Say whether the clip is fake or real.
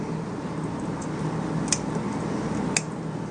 real